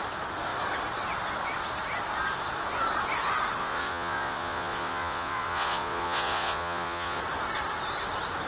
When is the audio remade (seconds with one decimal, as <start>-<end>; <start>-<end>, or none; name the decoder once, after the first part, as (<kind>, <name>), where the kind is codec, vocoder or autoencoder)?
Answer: 3.6-7.2 (vocoder, Vocos)